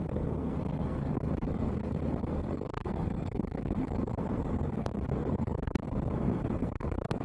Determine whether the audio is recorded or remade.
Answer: remade